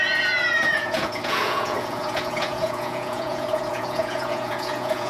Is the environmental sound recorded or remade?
remade